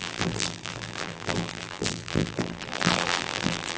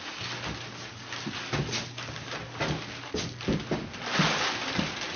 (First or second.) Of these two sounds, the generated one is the first